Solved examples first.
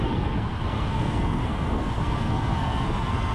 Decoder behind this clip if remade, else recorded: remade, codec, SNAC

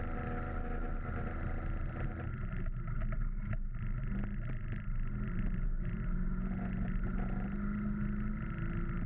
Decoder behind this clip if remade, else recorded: recorded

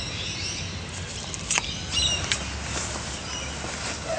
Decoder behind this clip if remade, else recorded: recorded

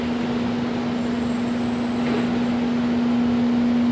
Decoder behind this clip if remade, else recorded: recorded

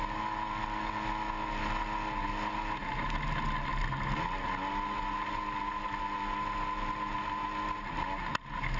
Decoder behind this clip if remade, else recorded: recorded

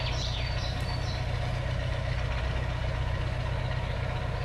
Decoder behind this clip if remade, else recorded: recorded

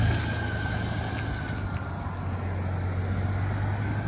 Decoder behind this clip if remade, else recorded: recorded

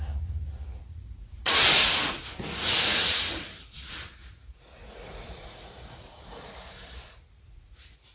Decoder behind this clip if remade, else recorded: remade, vocoder, Vocos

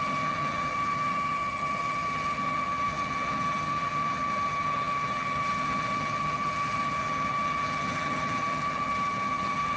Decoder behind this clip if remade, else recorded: remade, vocoder, HiFi-GAN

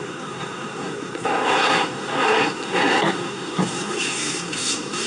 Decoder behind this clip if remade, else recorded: remade, codec, SNAC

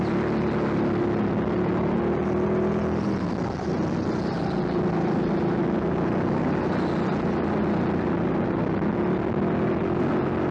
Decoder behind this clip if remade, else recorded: recorded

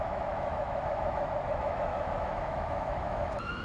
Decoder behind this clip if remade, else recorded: remade, autoencoder, DAC-VAE